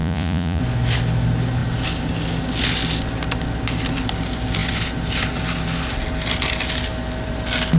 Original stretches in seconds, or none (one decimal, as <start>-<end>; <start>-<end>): 0.6-7.8